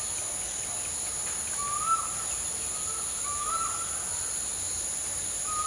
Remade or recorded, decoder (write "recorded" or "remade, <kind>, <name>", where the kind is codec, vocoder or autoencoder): recorded